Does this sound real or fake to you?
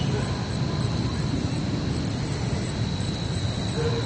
real